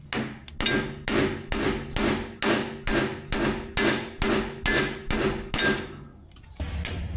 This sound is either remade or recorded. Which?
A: recorded